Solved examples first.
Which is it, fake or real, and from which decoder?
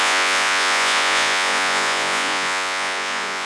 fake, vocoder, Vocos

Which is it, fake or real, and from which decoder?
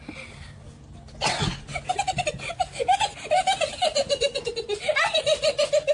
real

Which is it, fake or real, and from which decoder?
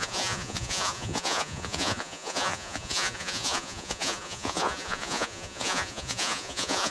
fake, vocoder, Vocos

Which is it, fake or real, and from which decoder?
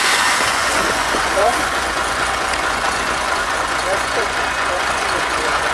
fake, vocoder, Vocos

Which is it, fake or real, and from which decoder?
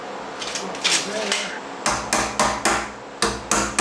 real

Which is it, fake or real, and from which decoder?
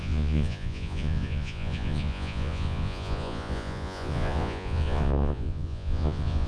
fake, vocoder, Vocos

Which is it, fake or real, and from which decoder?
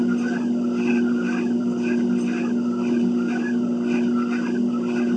real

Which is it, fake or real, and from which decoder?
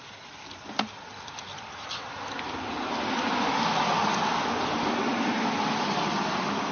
real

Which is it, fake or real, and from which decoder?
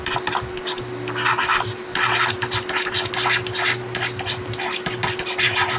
real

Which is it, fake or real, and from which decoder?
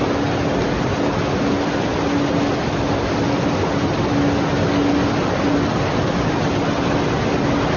real